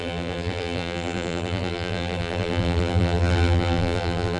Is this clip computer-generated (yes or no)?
yes